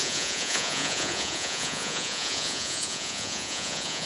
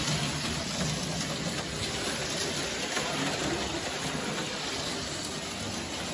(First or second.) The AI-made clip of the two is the first